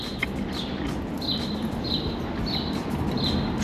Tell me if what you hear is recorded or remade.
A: recorded